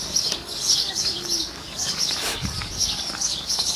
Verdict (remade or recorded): remade